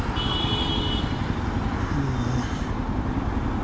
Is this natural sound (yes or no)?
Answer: yes